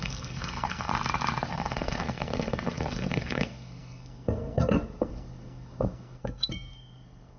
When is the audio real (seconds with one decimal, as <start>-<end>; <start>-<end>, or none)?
0.9-1.5